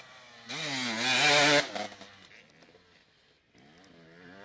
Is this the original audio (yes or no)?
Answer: yes